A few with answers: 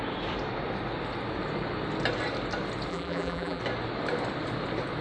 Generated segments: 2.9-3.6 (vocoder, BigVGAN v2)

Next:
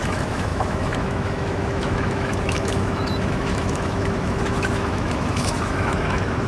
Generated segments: 0.0-6.5 (autoencoder, DAC-VAE)

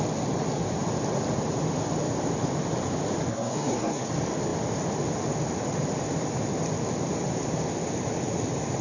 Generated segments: 3.3-4.1 (codec, SNAC)